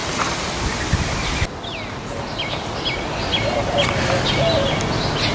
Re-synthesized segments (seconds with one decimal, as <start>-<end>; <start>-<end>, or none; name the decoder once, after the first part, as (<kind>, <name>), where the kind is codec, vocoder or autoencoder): none